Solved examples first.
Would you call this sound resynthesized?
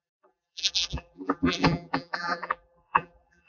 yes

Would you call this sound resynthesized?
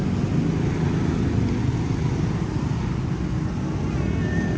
no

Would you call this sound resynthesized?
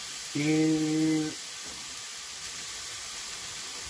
no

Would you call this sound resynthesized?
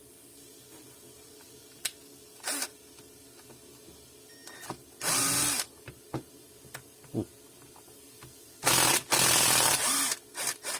no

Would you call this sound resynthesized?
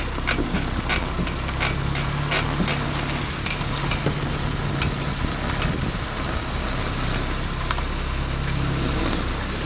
no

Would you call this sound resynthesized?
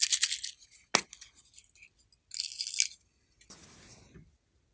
no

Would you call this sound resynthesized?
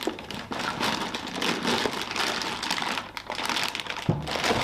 no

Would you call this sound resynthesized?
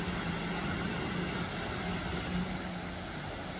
no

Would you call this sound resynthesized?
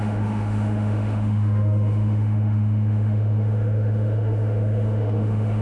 yes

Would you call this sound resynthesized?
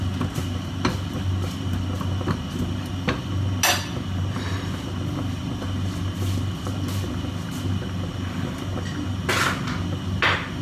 no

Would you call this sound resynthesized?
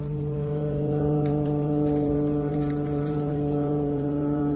yes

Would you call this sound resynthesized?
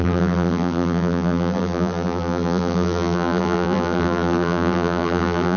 yes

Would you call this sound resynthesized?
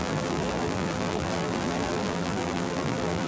yes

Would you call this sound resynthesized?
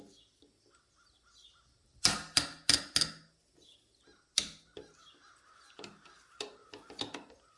no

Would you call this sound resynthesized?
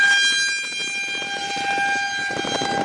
no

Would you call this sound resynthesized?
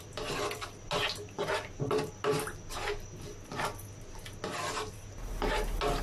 no